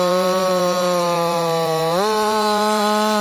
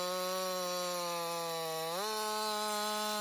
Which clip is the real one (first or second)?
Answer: second